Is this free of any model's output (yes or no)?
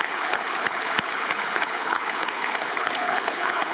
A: no